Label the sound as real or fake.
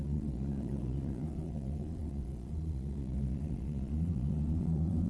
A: fake